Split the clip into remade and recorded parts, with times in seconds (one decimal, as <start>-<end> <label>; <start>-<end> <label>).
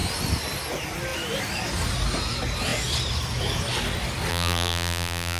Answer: 0.0-4.3 recorded; 4.3-5.4 remade